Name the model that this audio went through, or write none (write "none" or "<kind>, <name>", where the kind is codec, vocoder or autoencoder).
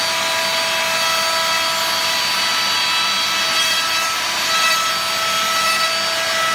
none